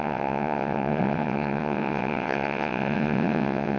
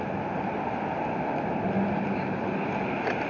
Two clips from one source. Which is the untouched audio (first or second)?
second